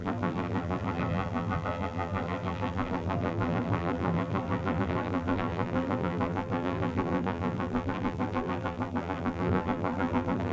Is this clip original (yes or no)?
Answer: no